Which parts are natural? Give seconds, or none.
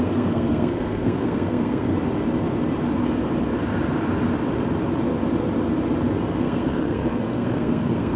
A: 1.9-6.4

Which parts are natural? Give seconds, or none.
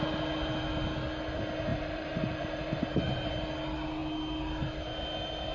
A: 0.0-1.7; 3.3-5.5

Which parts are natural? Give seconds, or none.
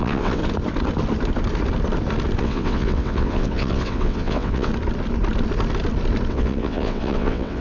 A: 0.4-2.4; 4.7-6.3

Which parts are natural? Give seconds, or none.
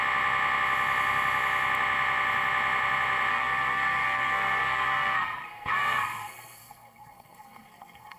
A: 0.0-3.3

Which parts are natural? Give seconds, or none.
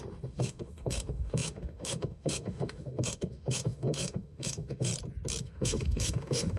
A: 4.9-5.4